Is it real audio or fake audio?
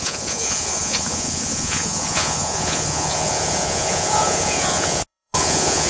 fake